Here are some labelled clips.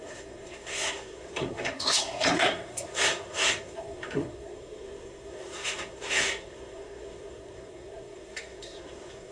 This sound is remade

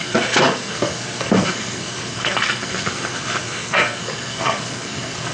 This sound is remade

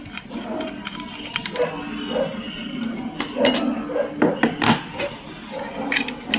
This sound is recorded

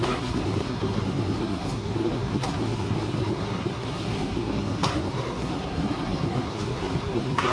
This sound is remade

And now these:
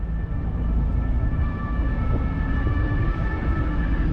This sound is recorded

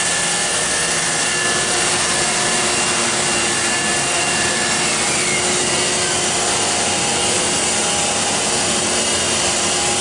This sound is recorded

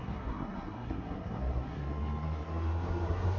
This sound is remade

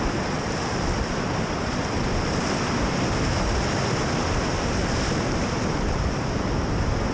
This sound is recorded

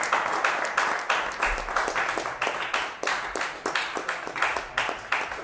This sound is recorded